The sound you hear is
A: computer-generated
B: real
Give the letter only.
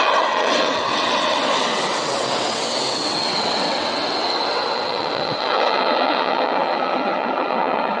A